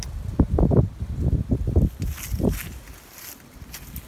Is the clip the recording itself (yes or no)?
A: yes